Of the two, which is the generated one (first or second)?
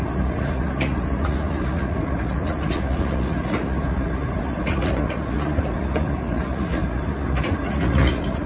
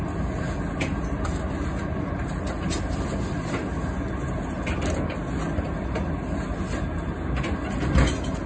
first